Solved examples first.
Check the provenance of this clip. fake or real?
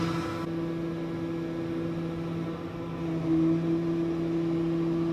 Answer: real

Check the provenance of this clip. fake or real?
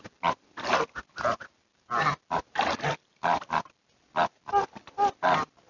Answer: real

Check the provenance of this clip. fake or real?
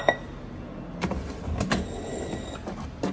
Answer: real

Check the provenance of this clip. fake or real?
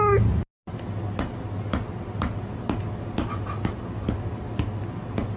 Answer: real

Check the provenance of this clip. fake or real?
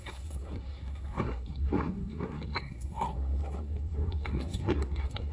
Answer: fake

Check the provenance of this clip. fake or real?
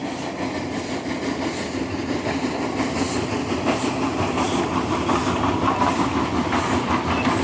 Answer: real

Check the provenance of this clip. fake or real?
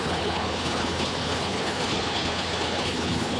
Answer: fake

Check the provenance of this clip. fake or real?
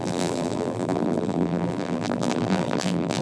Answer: fake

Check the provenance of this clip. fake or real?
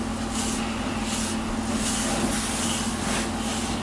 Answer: real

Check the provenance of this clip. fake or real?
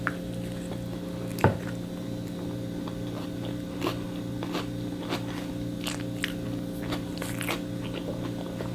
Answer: real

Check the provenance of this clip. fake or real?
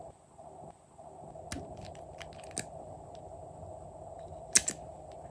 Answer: real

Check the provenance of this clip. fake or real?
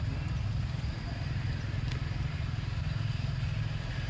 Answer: real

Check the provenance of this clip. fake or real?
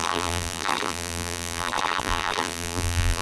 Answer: fake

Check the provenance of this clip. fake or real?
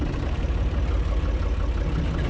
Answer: real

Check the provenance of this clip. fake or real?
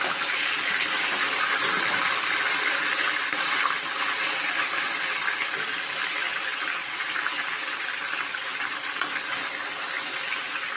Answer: real